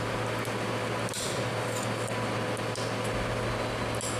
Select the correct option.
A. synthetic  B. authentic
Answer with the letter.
B